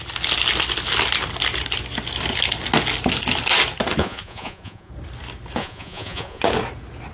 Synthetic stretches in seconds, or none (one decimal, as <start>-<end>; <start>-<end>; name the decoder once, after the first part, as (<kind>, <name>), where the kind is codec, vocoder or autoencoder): 4.0-4.9 (vocoder, Vocos); 5.6-6.4